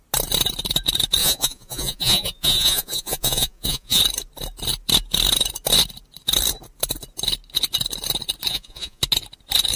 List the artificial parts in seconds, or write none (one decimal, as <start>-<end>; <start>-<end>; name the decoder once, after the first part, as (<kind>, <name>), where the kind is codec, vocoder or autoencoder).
1.2-4.0 (vocoder, Vocos); 8.5-9.0